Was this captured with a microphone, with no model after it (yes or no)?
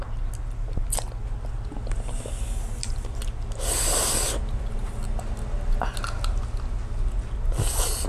yes